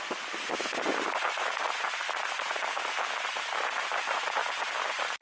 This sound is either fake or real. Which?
real